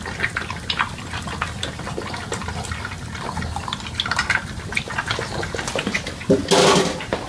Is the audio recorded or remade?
recorded